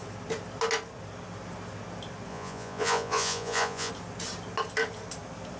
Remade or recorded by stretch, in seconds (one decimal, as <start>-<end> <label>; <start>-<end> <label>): 0.0-2.3 recorded; 2.3-3.9 remade; 3.9-5.6 recorded